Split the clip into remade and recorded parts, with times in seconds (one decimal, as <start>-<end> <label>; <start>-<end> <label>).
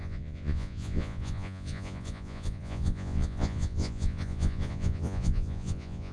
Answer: 0.0-6.1 remade